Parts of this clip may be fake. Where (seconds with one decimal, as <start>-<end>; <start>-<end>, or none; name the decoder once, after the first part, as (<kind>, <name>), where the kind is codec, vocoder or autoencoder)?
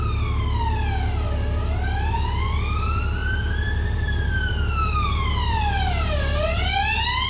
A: 3.2-4.5 (vocoder, BigVGAN v2)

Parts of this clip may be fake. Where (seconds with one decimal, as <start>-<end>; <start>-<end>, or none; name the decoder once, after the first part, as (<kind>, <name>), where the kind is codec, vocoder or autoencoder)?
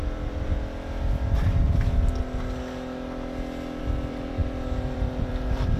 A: 0.0-0.5 (vocoder, BigVGAN v2); 3.8-5.8